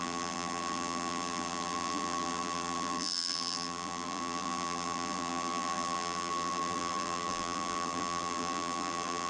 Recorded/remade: remade